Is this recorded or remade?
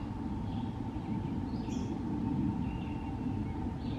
recorded